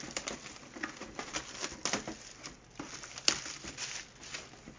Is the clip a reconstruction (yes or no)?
no